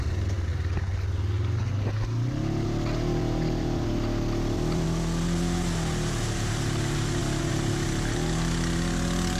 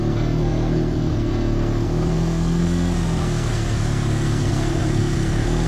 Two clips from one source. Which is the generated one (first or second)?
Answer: second